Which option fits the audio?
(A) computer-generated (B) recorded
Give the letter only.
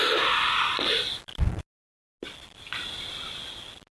B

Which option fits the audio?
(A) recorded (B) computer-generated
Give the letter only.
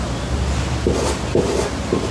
A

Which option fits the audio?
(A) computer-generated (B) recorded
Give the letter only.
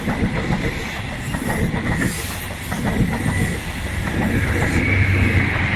A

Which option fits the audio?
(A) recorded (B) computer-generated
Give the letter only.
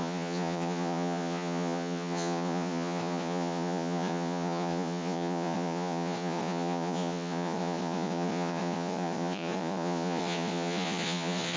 B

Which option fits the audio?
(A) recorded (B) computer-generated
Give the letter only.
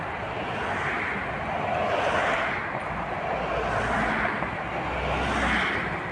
A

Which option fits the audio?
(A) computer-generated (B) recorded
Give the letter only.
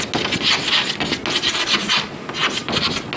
B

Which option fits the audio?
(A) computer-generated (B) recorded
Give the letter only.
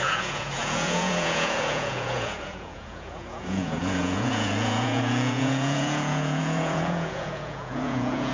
A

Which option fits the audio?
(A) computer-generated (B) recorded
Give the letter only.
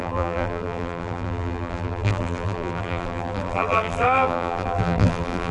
A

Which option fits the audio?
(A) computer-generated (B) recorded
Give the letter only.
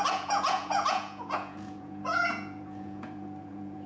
A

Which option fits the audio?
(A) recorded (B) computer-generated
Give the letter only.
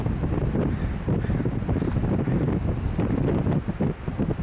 A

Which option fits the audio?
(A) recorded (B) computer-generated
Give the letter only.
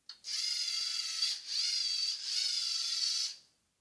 A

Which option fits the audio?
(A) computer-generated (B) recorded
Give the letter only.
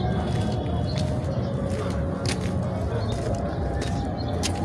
B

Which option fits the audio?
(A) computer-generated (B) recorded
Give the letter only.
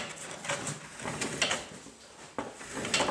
B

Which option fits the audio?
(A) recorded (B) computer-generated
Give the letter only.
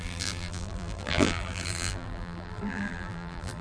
B